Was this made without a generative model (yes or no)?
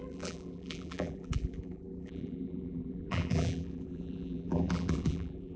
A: no